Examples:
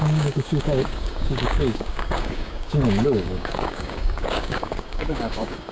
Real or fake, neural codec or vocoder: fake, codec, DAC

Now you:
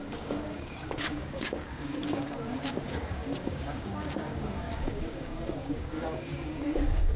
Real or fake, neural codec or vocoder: fake, codec, DAC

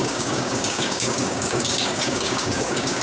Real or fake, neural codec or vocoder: fake, codec, DAC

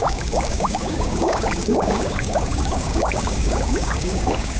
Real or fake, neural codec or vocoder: fake, codec, DAC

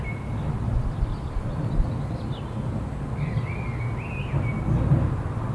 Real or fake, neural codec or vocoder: real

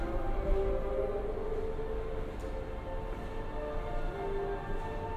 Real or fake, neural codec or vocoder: real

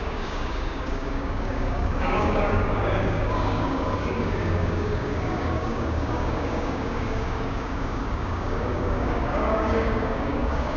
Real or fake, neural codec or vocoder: fake, codec, DAC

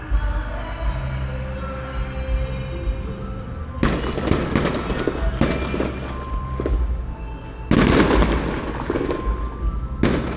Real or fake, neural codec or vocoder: real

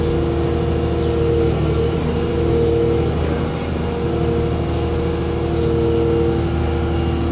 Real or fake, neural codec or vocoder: real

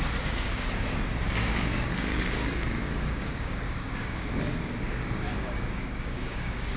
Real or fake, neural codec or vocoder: fake, codec, DAC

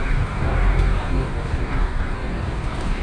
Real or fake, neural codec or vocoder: fake, codec, DAC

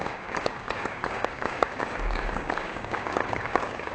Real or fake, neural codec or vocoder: fake, codec, DAC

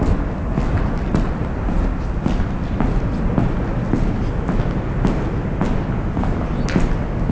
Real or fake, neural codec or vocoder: real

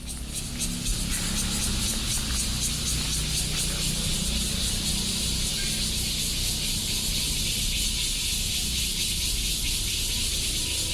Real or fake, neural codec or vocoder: real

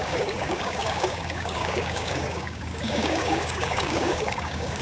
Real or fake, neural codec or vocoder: fake, codec, DAC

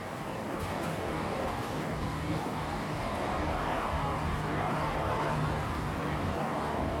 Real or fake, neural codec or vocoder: fake, codec, DAC